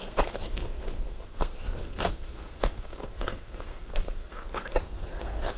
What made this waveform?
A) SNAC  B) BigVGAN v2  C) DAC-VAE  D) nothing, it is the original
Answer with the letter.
A